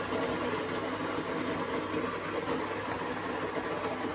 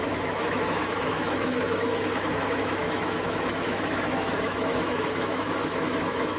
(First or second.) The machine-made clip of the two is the second